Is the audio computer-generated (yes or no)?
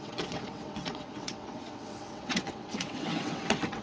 yes